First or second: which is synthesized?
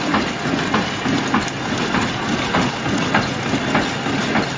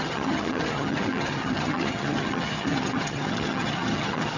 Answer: second